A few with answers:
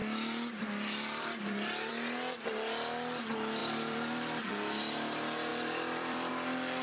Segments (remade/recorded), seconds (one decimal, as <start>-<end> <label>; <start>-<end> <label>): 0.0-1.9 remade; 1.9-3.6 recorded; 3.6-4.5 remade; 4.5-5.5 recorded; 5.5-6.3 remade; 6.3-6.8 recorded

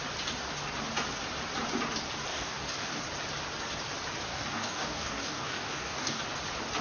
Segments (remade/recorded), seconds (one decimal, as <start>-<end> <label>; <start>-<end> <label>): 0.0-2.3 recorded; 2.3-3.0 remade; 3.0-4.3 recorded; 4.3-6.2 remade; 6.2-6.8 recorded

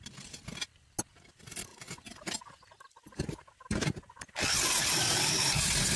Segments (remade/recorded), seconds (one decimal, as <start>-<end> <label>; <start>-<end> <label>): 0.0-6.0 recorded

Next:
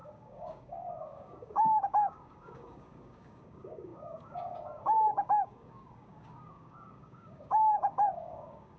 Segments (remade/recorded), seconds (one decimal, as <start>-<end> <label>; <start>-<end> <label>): 0.0-8.8 remade

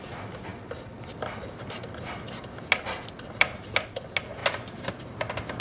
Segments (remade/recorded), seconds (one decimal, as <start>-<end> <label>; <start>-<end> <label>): 0.0-5.6 recorded